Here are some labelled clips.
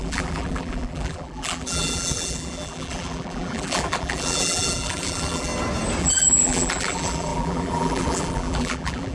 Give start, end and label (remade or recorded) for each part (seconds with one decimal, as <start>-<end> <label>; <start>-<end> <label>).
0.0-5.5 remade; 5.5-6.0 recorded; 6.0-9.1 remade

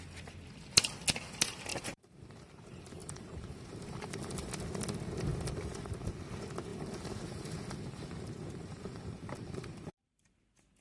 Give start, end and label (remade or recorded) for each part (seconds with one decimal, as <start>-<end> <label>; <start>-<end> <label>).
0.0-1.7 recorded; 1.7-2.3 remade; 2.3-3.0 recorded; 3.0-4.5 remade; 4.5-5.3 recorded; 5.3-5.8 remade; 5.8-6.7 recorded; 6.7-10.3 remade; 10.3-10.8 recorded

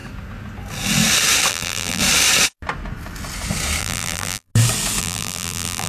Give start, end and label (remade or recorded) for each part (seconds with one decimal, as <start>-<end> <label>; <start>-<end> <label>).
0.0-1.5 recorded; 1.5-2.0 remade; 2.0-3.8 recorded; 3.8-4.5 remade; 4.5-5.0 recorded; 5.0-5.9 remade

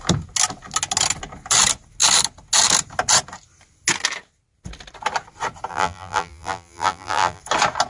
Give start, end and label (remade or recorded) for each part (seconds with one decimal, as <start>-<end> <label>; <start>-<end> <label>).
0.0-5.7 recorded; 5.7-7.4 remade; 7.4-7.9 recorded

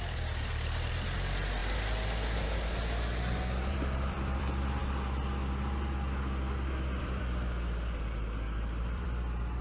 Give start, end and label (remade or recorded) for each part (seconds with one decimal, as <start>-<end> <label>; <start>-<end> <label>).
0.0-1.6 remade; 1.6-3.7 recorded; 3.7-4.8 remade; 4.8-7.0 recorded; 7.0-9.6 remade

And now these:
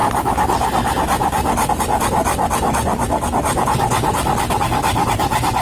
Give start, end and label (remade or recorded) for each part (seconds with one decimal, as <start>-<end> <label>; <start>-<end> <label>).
0.0-5.6 recorded

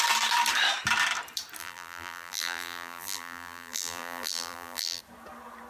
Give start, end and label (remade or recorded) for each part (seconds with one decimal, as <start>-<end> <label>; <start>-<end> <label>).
0.0-1.6 recorded; 1.6-5.0 remade; 5.0-5.7 recorded

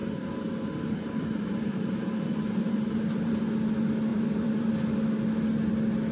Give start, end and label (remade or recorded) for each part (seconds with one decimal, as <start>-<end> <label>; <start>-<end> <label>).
0.0-3.3 remade; 3.3-4.1 recorded; 4.1-4.7 remade; 4.7-6.1 recorded